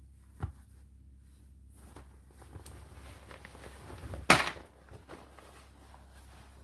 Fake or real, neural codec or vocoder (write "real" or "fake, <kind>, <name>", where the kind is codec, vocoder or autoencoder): real